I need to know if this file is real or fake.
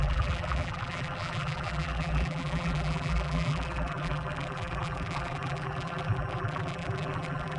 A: fake